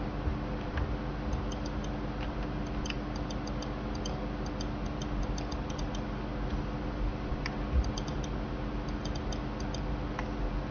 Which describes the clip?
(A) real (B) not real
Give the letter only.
A